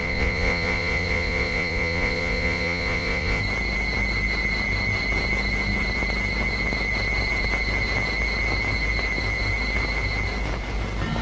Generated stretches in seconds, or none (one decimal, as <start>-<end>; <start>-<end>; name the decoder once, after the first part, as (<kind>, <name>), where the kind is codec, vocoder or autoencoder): 0.0-3.4 (vocoder, Vocos)